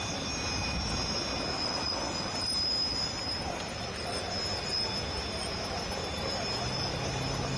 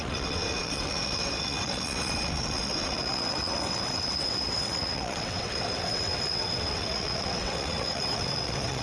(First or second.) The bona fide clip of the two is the first